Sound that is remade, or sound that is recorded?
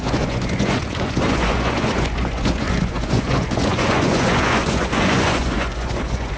remade